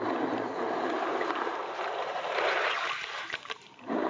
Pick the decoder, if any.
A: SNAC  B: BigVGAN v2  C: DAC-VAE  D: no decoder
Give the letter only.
B